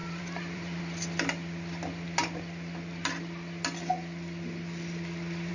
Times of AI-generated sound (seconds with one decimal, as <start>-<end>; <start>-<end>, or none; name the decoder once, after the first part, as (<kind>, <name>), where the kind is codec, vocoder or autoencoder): 0.0-0.8 (vocoder, BigVGAN v2)